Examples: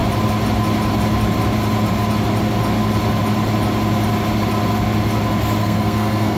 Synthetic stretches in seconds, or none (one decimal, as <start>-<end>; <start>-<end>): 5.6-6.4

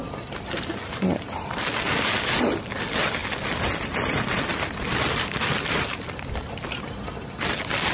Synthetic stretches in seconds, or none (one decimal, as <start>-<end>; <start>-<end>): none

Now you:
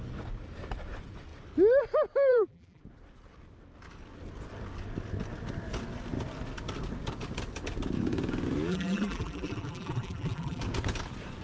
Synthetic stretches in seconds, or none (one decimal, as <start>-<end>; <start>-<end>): 2.3-2.8; 8.7-10.6

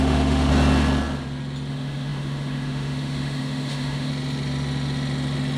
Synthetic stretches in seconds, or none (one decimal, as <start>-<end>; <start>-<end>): 0.0-0.5; 1.7-4.1

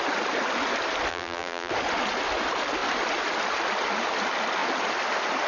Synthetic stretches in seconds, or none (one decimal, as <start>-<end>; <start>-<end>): 1.1-1.7

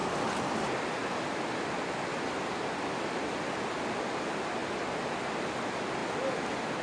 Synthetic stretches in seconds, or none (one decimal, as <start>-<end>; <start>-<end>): none

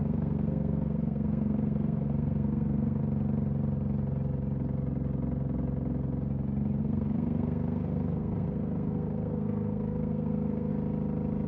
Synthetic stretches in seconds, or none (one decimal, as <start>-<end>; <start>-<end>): 0.0-3.0; 6.8-10.7

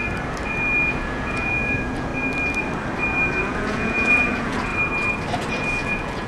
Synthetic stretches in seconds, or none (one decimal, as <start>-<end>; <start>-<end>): 0.9-2.1; 3.4-4.7; 5.5-6.3